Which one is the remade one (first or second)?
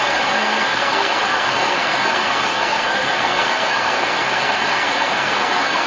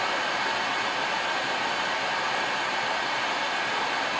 first